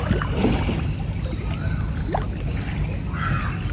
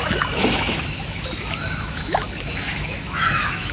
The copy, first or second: second